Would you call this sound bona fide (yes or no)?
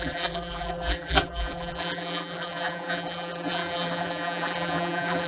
no